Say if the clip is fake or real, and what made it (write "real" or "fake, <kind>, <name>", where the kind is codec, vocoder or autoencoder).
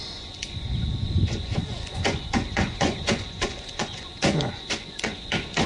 fake, vocoder, Vocos